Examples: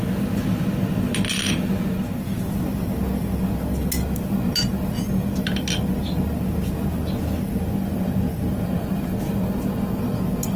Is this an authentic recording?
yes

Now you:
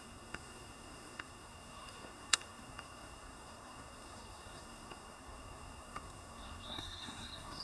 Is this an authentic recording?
no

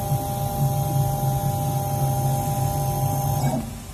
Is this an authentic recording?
yes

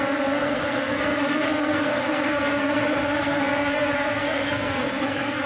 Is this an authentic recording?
no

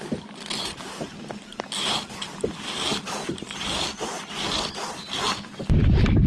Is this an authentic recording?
yes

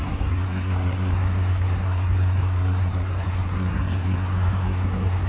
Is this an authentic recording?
no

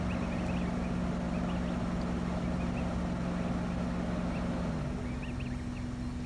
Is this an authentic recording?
yes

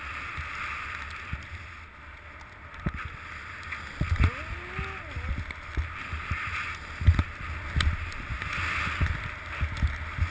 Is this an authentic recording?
yes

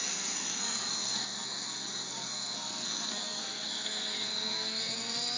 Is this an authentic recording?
no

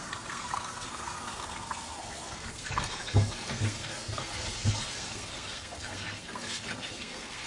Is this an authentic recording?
no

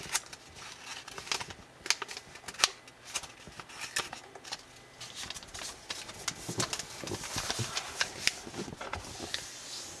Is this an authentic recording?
yes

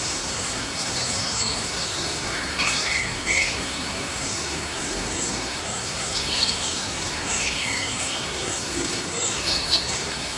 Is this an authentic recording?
no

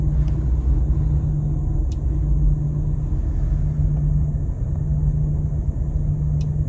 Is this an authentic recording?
yes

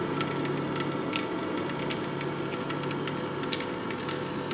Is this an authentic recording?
yes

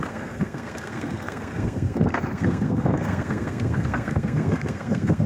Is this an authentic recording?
no